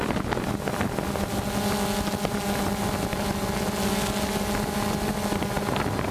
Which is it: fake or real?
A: real